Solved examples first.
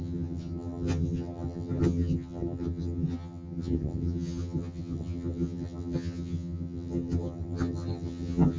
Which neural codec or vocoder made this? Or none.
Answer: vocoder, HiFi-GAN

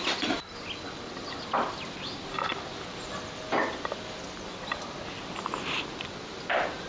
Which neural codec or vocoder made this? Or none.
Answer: none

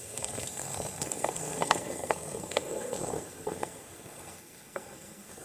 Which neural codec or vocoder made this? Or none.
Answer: codec, SNAC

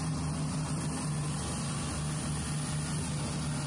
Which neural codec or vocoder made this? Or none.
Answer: none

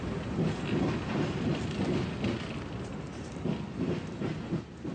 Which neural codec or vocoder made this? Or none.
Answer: none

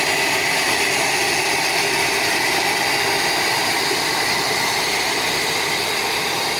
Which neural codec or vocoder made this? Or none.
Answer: none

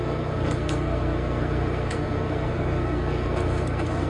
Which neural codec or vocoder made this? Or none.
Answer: codec, SNAC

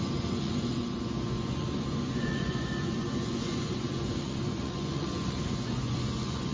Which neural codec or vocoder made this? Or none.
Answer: vocoder, Vocos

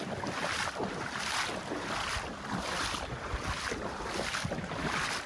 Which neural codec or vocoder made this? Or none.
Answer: none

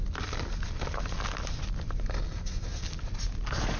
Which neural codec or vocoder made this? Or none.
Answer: none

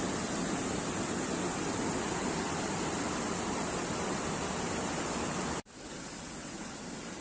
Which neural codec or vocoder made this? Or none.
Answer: none